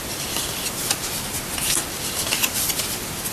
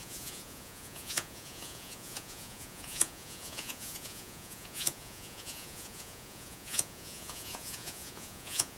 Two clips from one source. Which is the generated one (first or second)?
second